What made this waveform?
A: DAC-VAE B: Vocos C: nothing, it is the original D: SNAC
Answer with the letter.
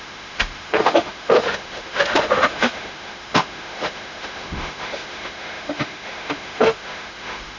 A